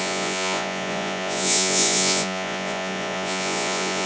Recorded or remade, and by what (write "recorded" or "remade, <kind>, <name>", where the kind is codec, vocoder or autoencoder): remade, vocoder, Vocos